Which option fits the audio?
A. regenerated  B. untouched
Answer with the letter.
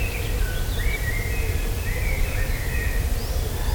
B